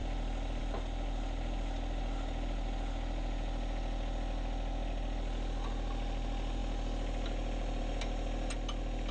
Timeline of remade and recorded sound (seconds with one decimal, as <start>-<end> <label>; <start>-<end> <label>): 0.0-9.1 recorded